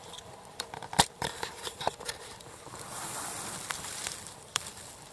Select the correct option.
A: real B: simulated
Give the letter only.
B